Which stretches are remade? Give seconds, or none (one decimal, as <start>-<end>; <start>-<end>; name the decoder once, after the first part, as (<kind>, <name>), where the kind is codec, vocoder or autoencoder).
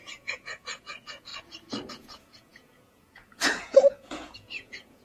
0.0-1.3 (vocoder, Vocos); 1.9-5.0